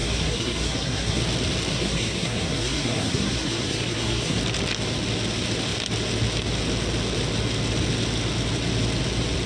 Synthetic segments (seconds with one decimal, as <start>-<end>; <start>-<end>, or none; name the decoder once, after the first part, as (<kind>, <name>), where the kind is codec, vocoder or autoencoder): 0.0-1.2 (codec, SNAC); 1.7-4.4